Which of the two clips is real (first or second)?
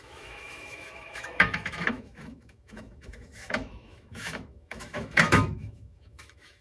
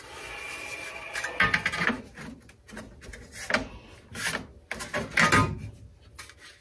second